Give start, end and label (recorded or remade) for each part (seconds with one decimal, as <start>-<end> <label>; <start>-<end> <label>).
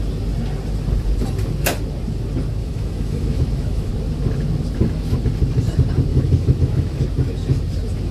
0.0-2.6 recorded; 2.6-3.9 remade; 3.9-6.1 recorded; 6.1-7.0 remade; 7.0-8.1 recorded